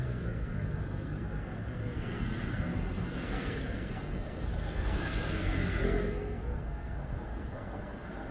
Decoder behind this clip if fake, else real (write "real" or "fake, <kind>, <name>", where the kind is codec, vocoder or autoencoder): fake, codec, SNAC